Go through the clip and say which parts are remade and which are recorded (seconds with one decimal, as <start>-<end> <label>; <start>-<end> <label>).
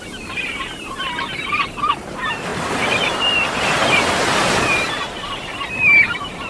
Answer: 0.0-2.5 remade; 2.5-5.7 recorded; 5.7-6.5 remade